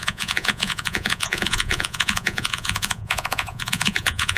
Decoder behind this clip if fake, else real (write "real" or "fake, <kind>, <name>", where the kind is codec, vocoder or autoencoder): fake, vocoder, Vocos